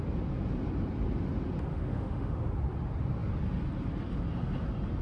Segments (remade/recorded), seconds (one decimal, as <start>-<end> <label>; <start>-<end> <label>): 0.0-1.7 recorded; 1.7-2.4 remade; 2.4-5.0 recorded

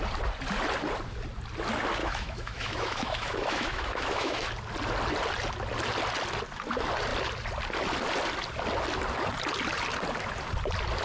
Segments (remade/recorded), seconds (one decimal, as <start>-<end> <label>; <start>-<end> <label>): 0.0-2.0 recorded; 2.0-4.5 remade; 4.5-11.0 recorded